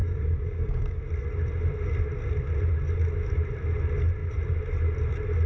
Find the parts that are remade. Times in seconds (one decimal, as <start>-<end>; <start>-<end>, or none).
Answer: 0.0-1.0